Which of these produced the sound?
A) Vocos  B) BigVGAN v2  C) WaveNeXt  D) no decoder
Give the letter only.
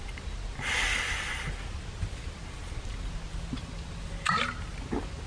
D